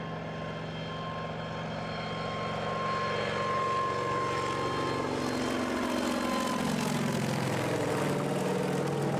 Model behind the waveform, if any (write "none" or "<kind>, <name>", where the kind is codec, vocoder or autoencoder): none